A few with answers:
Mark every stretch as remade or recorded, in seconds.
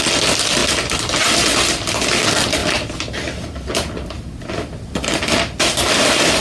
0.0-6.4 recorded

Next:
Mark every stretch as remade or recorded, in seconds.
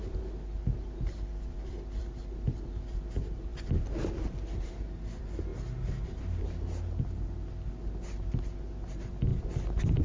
0.0-10.0 recorded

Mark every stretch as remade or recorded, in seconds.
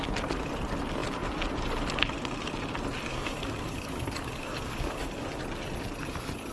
0.0-3.1 recorded; 3.1-5.4 remade; 5.4-6.5 recorded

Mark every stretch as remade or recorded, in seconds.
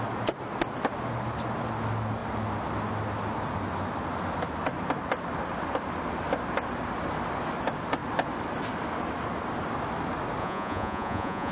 0.0-10.4 recorded; 10.4-11.5 remade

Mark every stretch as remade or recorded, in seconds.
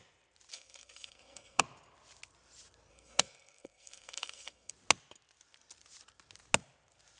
0.0-0.5 recorded; 0.5-1.6 remade; 1.6-2.9 recorded; 2.9-4.7 remade; 4.7-7.2 recorded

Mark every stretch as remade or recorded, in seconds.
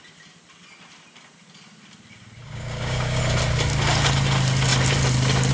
0.0-2.4 recorded; 2.4-3.2 remade; 3.2-5.5 recorded